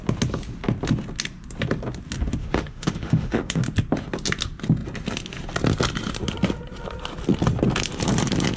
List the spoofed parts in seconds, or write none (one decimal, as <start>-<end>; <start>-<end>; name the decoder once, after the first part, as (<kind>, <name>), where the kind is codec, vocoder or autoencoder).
2.4-3.6 (autoencoder, DAC-VAE)